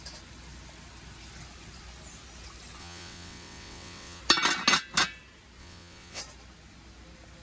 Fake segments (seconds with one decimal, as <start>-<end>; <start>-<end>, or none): 2.8-4.2; 5.6-6.2